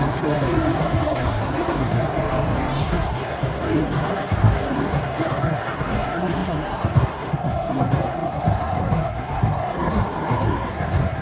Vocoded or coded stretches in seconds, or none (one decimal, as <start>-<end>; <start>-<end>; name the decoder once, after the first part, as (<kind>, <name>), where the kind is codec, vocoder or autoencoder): 0.0-2.2 (codec, SNAC); 2.8-11.2